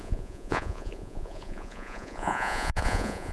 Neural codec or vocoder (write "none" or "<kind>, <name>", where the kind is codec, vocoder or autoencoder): vocoder, Vocos